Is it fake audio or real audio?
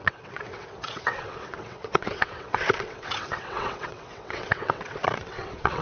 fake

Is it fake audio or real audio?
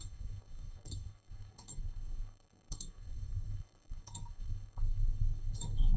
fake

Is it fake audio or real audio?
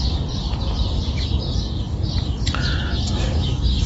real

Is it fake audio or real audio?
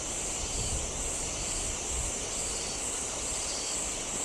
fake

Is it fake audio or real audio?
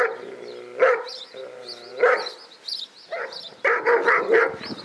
real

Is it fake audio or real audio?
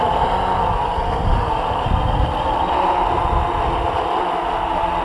real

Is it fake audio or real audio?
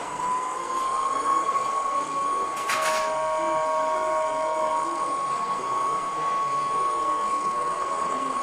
fake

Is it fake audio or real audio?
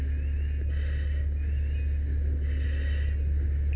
real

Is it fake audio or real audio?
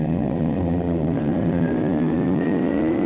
fake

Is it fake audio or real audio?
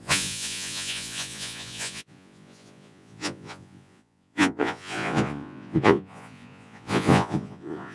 fake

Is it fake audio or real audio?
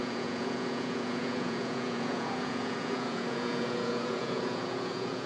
fake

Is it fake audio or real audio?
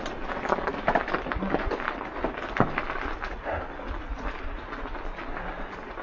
real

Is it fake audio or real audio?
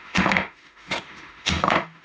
fake